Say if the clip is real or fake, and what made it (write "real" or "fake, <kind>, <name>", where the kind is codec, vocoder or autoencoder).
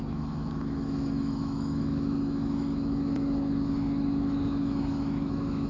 fake, autoencoder, DAC-VAE